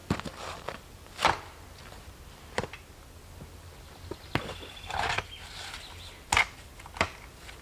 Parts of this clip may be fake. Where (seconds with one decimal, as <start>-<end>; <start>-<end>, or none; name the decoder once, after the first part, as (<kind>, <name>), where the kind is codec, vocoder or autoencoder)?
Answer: none